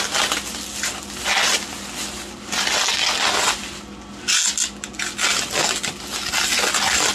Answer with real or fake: real